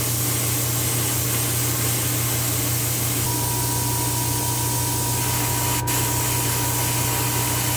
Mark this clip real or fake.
real